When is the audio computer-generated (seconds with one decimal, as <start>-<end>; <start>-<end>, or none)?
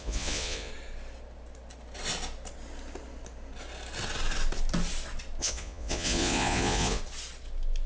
0.0-0.7; 5.4-7.0